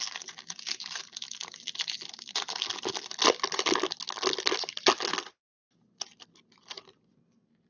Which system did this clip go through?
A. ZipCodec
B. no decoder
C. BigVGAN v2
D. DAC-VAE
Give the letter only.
B